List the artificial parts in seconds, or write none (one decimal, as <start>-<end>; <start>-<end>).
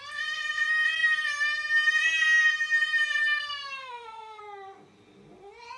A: 3.8-4.4